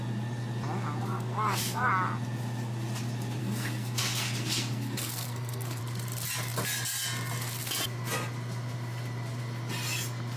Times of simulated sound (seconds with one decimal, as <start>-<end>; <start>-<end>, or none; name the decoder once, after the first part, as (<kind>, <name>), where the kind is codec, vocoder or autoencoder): 1.0-1.9 (codec, SNAC); 3.4-5.8